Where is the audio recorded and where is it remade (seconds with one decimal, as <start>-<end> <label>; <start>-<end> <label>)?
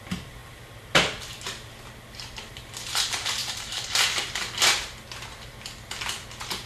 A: 0.0-3.4 recorded; 3.4-3.9 remade; 3.9-6.7 recorded